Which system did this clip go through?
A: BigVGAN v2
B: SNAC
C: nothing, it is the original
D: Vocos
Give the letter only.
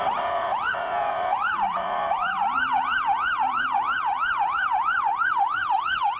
D